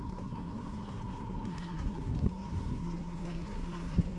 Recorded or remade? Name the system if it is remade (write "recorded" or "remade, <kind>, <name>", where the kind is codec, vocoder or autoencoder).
remade, codec, SNAC